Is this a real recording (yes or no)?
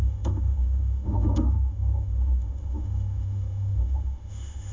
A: no